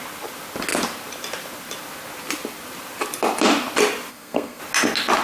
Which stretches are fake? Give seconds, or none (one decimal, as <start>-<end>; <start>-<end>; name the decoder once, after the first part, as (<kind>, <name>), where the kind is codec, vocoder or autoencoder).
4.1-4.6 (codec, SNAC)